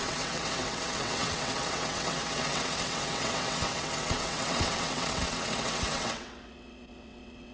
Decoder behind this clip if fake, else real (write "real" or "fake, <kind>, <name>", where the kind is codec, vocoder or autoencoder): fake, vocoder, WaveNeXt